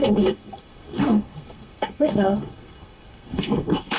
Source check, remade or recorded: remade